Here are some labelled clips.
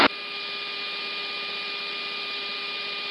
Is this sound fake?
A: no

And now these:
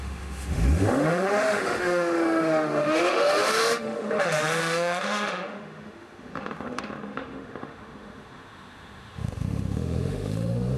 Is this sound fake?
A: yes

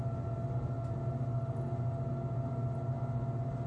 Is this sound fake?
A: no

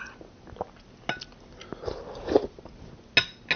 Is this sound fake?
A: no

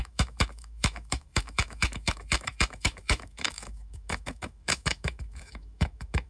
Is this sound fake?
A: yes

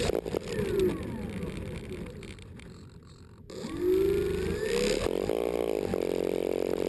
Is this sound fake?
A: no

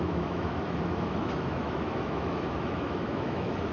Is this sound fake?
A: yes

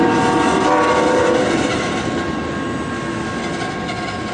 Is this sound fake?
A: no